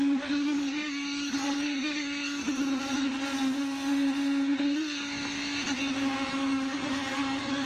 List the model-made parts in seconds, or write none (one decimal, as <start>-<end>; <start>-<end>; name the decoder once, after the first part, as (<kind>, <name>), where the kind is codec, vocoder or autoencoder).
0.0-2.4 (codec, DAC); 6.3-7.7